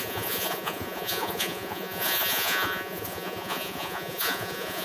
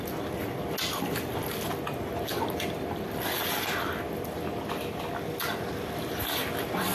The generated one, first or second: first